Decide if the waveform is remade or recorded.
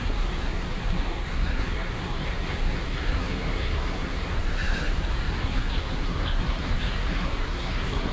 remade